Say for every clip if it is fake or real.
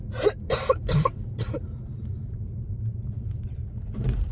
fake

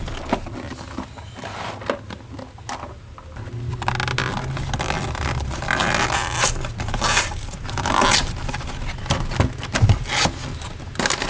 real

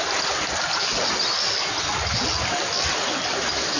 real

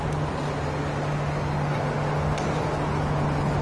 real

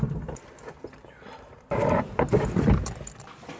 fake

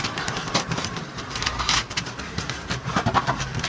fake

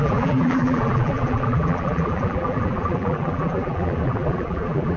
fake